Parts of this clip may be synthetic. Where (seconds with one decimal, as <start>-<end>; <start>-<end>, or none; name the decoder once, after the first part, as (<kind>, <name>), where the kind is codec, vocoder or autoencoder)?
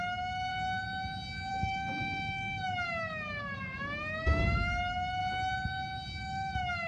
0.0-0.5 (autoencoder, DAC-VAE); 1.5-5.2; 6.2-6.9